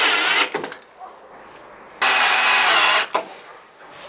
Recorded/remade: recorded